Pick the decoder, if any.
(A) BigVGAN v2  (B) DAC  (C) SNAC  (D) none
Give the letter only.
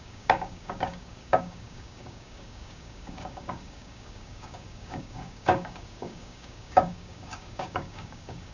B